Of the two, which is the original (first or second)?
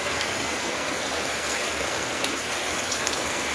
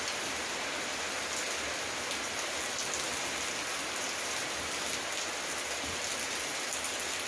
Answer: second